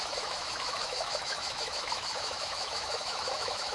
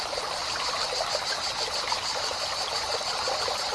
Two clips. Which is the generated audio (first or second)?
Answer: first